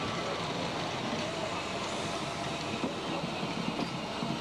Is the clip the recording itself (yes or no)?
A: yes